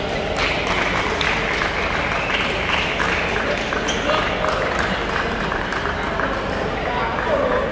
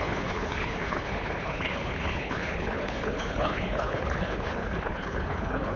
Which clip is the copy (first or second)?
second